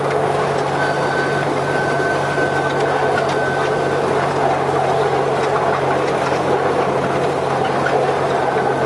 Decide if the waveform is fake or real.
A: real